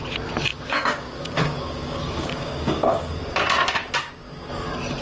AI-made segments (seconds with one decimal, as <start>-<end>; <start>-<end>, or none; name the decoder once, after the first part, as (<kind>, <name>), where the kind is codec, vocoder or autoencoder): 0.5-3.2 (codec, DAC); 4.0-4.5